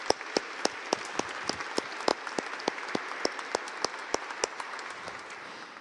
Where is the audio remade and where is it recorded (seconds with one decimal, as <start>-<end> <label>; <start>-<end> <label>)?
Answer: 0.0-5.8 recorded